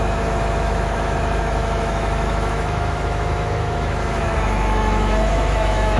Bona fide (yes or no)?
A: no